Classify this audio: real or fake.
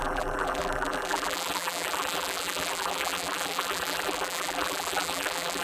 fake